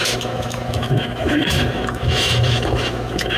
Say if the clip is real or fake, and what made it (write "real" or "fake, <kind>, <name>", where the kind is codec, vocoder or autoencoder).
fake, autoencoder, DAC-VAE